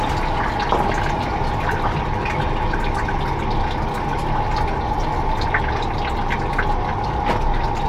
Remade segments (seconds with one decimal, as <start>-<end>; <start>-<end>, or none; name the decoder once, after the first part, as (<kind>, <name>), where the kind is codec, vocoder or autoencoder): none